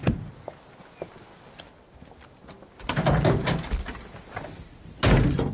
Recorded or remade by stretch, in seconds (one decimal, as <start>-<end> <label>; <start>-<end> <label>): 0.0-5.5 recorded